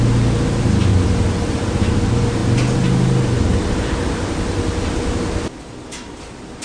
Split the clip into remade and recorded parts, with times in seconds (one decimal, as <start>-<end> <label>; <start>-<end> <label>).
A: 0.0-0.9 recorded; 0.9-1.9 remade; 1.9-6.6 recorded